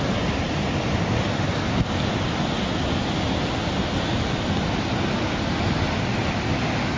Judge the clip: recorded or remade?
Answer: recorded